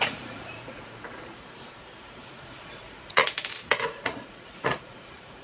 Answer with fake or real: fake